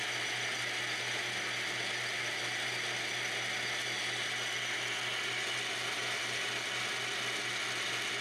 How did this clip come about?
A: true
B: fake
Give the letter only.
A